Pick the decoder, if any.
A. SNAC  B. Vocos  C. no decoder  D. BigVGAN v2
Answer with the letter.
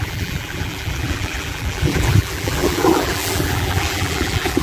D